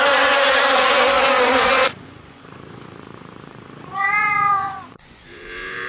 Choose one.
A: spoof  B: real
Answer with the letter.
A